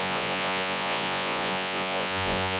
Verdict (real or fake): fake